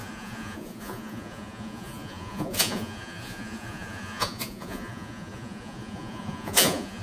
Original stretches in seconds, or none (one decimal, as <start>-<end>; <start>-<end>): none